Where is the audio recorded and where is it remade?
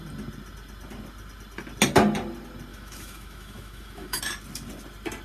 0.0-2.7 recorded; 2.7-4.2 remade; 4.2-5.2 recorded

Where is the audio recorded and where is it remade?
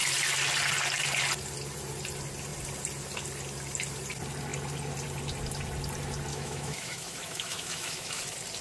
0.0-6.3 recorded; 6.3-8.2 remade; 8.2-8.6 recorded